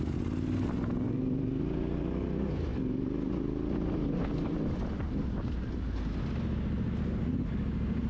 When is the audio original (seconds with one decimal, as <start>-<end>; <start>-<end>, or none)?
0.0-8.1